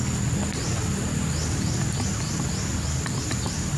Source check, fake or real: real